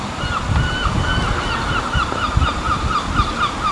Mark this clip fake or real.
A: real